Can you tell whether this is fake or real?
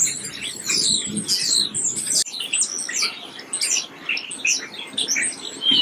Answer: real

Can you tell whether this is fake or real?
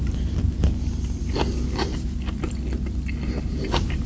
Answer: real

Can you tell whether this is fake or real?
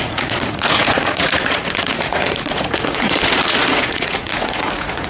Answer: fake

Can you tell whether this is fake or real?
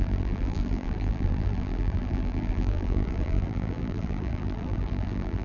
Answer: fake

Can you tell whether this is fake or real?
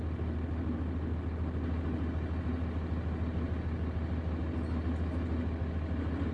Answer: real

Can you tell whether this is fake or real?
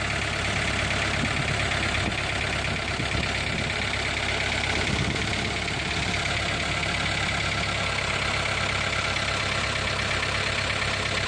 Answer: real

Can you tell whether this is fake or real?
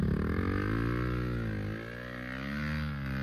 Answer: real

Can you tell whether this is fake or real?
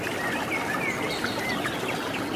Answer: real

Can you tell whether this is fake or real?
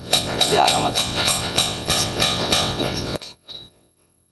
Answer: fake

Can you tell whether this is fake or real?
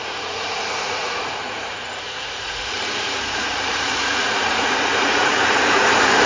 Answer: fake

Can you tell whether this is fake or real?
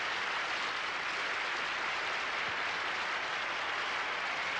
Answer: real